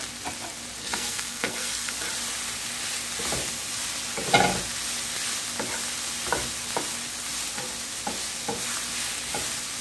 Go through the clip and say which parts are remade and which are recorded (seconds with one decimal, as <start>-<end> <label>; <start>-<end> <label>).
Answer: 0.0-0.8 recorded; 0.8-1.9 remade; 1.9-9.8 recorded

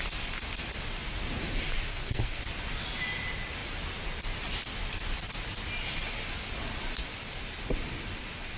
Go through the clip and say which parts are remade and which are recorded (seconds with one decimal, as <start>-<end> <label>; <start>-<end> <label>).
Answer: 0.0-1.9 recorded; 1.9-2.4 remade; 2.4-8.6 recorded

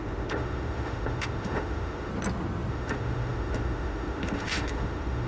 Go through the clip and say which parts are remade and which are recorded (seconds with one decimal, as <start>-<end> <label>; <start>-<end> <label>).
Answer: 0.0-2.1 remade; 2.1-2.7 recorded; 2.7-5.3 remade

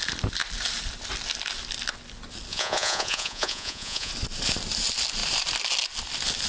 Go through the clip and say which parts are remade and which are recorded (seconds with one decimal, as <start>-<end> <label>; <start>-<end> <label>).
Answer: 0.0-2.5 recorded; 2.5-4.1 remade; 4.1-6.5 recorded